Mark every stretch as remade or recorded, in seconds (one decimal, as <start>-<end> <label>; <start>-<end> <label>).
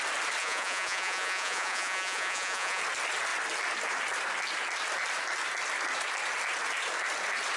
0.0-0.4 recorded; 0.4-2.8 remade; 2.8-7.6 recorded